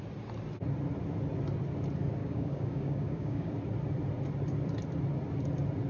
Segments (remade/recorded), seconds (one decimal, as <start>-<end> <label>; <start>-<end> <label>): 0.0-2.2 recorded; 2.2-3.5 remade; 3.5-5.9 recorded